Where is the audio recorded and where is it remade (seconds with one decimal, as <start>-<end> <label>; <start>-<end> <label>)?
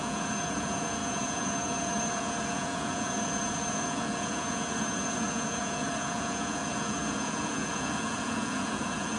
0.0-9.2 remade